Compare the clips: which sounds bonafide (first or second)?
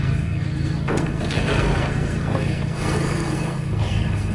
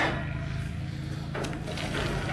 second